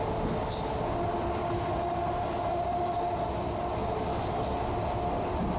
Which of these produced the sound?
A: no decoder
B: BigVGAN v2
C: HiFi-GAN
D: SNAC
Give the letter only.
A